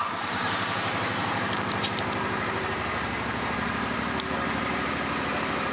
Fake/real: fake